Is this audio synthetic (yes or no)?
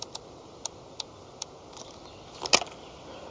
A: no